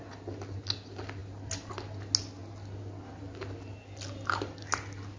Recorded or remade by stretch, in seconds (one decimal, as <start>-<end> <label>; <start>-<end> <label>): 0.0-5.2 recorded